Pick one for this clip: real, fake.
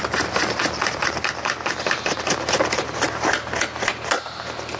real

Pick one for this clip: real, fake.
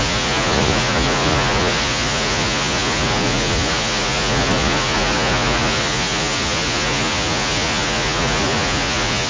fake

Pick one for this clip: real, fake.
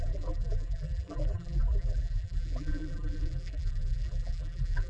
fake